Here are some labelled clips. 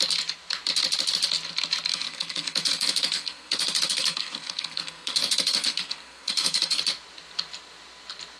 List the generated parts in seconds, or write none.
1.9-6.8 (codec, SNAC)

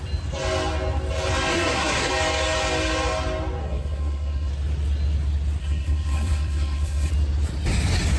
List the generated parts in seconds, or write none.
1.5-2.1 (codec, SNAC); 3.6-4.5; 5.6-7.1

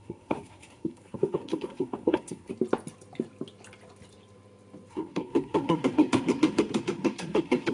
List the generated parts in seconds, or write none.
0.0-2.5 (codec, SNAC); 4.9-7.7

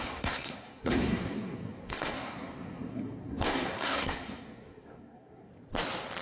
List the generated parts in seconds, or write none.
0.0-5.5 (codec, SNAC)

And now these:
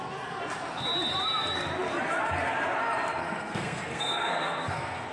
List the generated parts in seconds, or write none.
3.2-5.1 (codec, SNAC)

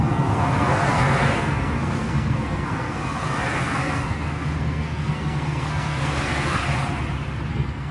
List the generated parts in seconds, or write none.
0.0-6.6 (codec, SNAC); 7.5-7.9

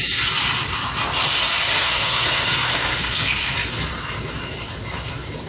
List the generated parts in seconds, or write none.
1.7-3.5 (codec, SNAC)